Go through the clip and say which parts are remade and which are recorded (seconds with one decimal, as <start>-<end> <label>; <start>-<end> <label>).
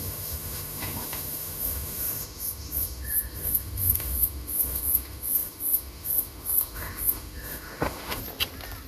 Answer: 0.0-8.2 remade; 8.2-8.9 recorded